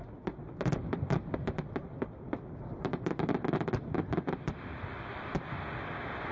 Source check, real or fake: real